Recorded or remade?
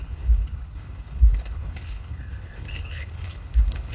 remade